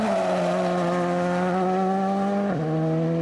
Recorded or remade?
recorded